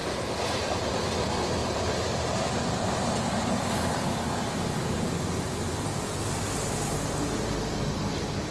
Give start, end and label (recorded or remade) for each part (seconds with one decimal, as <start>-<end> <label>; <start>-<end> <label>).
0.0-0.7 remade; 0.7-1.6 recorded; 1.6-2.3 remade; 2.3-8.5 recorded